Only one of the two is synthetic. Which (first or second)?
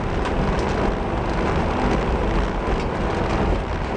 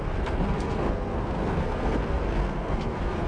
second